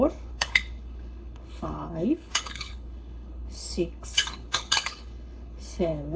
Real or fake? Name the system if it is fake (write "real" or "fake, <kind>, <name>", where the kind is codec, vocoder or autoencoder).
fake, codec, HILCodec